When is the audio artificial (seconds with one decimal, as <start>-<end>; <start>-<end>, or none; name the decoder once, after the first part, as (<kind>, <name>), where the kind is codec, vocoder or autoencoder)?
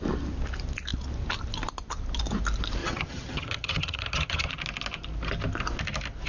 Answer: 2.8-4.5 (vocoder, HiFi-GAN)